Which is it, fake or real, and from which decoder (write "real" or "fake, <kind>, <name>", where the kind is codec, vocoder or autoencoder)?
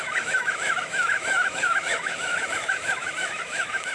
fake, autoencoder, DAC-VAE